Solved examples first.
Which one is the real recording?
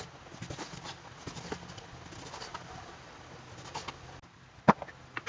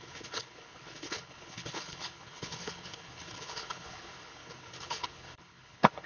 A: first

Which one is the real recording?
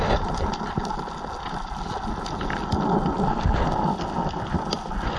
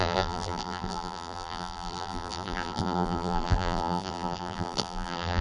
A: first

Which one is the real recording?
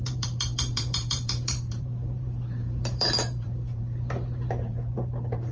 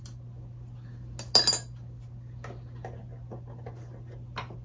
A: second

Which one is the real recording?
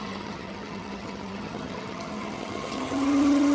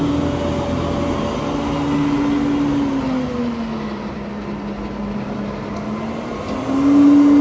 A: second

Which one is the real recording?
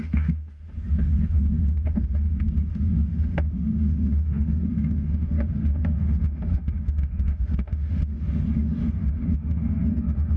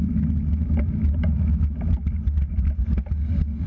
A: second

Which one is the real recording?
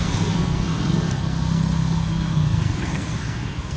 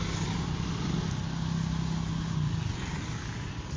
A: second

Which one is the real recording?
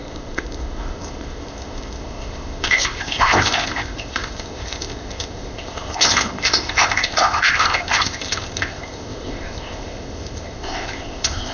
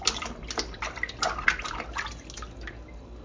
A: second